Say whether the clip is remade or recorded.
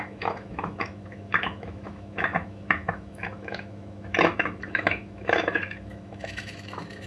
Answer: remade